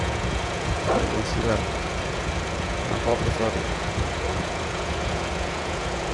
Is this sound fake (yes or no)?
yes